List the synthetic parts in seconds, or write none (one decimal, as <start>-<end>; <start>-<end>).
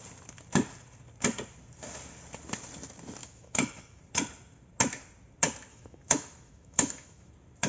3.2-4.0; 5.7-7.3